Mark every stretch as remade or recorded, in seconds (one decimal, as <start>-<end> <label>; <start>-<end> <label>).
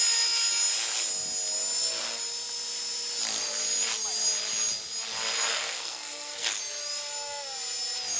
0.0-5.5 recorded; 5.5-6.6 remade; 6.6-8.2 recorded